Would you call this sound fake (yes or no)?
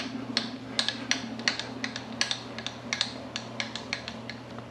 no